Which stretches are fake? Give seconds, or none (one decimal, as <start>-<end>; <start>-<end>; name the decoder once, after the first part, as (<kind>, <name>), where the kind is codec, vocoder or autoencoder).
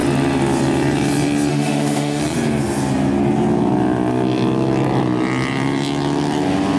1.5-2.2 (autoencoder, DAC-VAE)